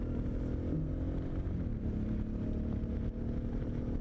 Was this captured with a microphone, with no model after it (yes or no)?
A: yes